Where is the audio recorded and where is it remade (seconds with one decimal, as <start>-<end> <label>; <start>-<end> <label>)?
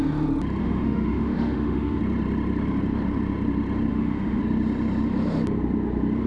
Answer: 0.0-0.6 recorded; 0.6-2.0 remade; 2.0-3.9 recorded; 3.9-4.4 remade; 4.4-6.3 recorded